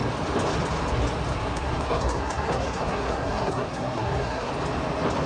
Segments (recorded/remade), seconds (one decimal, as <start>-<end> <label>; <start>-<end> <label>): 0.0-1.3 recorded; 1.3-4.5 remade; 4.5-5.3 recorded

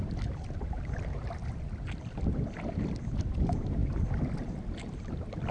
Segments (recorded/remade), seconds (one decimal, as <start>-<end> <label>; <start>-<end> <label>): 0.0-5.5 recorded

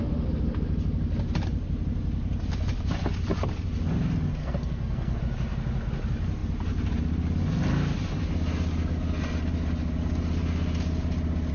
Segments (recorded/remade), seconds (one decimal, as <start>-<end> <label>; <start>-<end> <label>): 0.0-4.4 recorded; 4.4-5.2 remade; 5.2-11.5 recorded

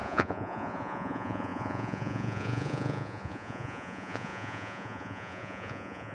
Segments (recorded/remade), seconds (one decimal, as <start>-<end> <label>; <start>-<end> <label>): 0.0-6.1 remade